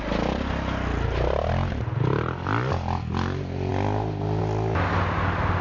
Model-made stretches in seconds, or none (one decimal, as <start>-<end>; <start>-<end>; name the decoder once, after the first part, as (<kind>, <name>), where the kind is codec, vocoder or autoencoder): none